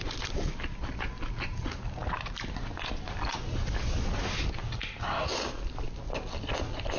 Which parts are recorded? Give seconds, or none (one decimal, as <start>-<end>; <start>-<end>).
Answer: 0.0-7.0